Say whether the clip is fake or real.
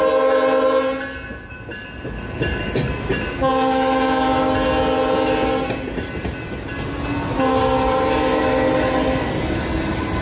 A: real